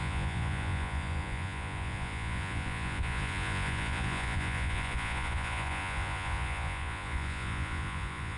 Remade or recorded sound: remade